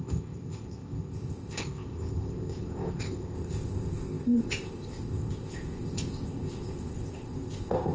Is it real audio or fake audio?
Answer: fake